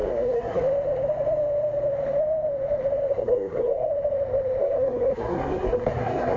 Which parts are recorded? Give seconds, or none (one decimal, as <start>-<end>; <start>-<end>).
0.6-3.1; 3.9-4.6